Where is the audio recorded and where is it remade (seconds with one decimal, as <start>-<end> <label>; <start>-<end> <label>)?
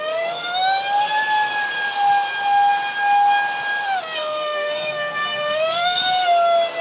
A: 0.0-0.5 remade; 0.5-4.0 recorded; 4.0-6.0 remade; 6.0-6.8 recorded